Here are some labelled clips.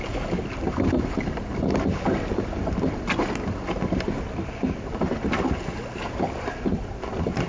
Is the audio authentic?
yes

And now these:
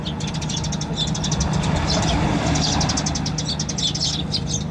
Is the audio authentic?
yes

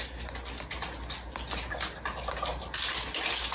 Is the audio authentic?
yes